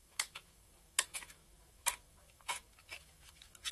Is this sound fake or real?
fake